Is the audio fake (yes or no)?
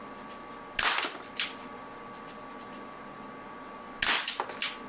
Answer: no